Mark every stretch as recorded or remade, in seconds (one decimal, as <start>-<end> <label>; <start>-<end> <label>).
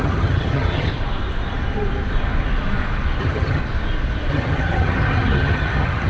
0.0-0.9 remade; 0.9-3.2 recorded; 3.2-3.6 remade; 3.6-4.3 recorded; 4.3-6.1 remade